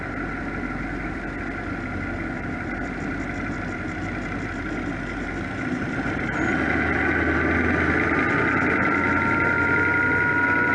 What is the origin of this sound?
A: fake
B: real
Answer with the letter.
B